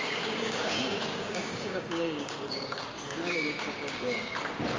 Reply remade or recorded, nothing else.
remade